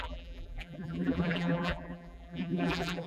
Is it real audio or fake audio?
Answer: fake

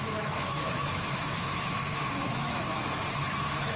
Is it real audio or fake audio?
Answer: fake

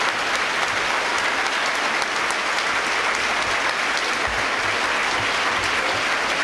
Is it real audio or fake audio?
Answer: real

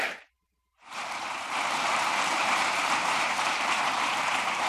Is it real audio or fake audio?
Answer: fake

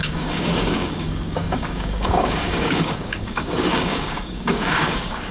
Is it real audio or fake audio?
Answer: fake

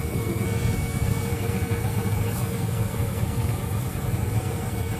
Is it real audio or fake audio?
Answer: fake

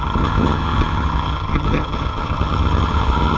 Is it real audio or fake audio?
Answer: fake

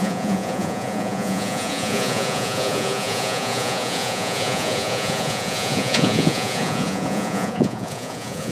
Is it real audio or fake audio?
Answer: fake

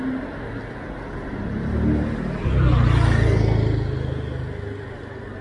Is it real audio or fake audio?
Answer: real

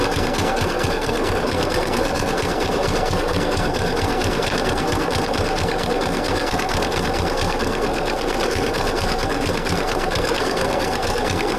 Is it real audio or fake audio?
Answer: fake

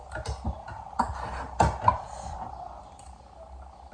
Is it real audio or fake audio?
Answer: real